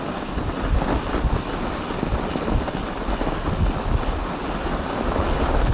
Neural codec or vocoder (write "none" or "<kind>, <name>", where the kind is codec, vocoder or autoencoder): none